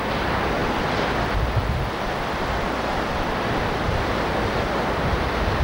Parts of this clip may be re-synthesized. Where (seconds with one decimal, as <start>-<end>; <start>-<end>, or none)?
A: 0.6-4.0